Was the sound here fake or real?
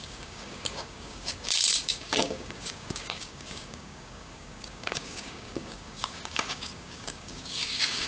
fake